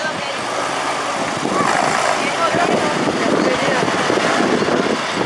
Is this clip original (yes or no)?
yes